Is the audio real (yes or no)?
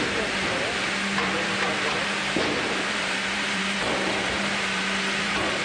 no